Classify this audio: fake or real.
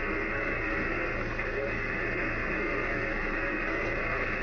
fake